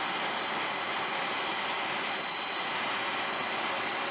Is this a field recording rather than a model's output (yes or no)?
yes